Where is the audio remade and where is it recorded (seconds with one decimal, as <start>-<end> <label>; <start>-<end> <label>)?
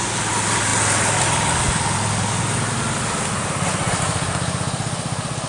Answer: 0.0-5.5 recorded